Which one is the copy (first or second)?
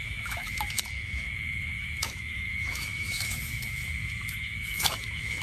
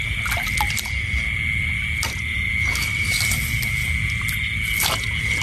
first